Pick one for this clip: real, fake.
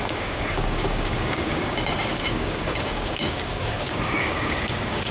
fake